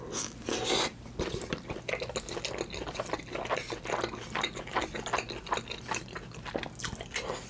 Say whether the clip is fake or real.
real